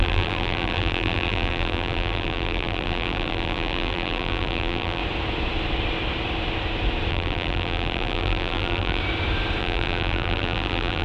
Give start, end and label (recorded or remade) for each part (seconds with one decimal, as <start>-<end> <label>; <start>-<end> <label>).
0.0-5.0 remade; 5.0-7.1 recorded; 7.1-9.0 remade; 9.0-9.6 recorded; 9.6-11.0 remade

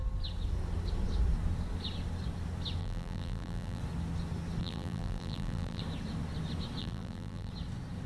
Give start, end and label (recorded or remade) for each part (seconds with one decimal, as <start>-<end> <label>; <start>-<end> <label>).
0.0-2.8 recorded; 2.8-3.8 remade; 3.8-4.6 recorded; 4.6-5.8 remade; 5.8-6.8 recorded; 6.8-7.5 remade; 7.5-8.1 recorded

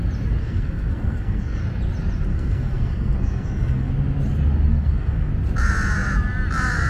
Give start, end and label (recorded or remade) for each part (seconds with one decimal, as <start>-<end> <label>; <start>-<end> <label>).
0.0-0.4 recorded; 0.4-1.6 remade; 1.6-2.3 recorded; 2.3-3.9 remade; 3.9-4.7 recorded; 4.7-5.3 remade; 5.3-6.9 recorded

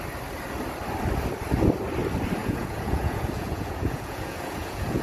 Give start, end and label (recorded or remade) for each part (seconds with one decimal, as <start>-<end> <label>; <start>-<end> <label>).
0.0-2.4 recorded; 2.4-5.0 remade

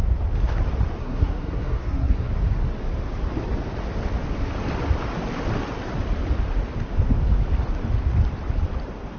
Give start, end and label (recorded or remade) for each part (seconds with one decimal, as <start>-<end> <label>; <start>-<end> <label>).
0.0-1.0 recorded; 1.0-2.3 remade; 2.3-9.2 recorded